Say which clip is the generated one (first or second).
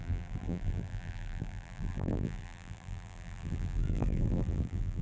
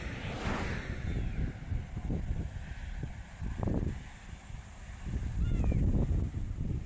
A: first